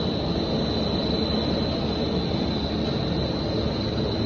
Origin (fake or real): real